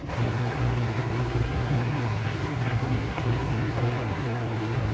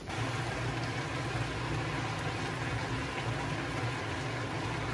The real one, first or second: second